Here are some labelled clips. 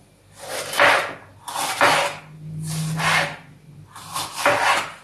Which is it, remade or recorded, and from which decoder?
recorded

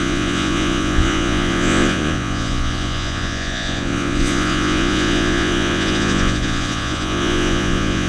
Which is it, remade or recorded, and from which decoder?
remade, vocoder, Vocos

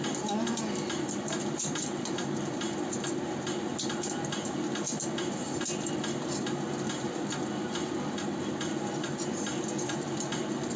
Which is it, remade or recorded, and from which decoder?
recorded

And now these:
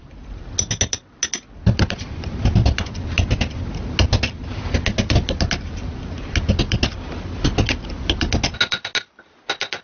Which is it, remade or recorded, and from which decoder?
recorded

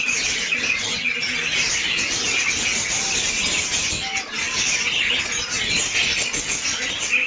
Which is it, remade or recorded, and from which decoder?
recorded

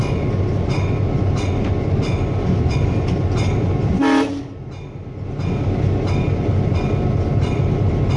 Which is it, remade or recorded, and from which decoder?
recorded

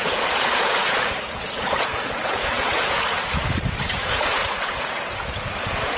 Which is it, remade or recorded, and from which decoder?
remade, vocoder, Vocos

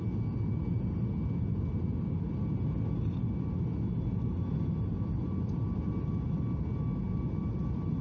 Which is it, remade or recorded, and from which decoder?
recorded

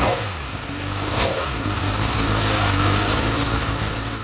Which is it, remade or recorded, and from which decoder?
remade, codec, DAC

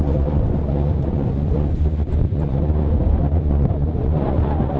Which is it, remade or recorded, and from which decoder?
remade, vocoder, Vocos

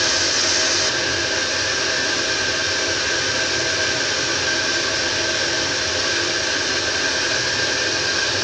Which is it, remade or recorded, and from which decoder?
recorded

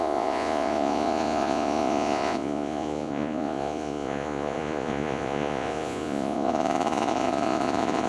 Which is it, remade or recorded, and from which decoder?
remade, vocoder, Vocos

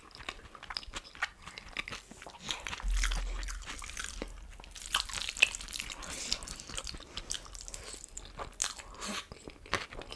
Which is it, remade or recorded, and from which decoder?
recorded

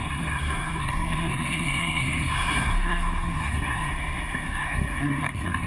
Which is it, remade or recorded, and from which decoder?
remade, codec, SNAC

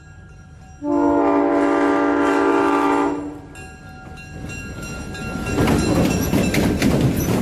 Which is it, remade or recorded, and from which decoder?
recorded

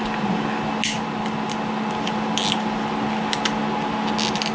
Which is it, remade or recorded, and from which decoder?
recorded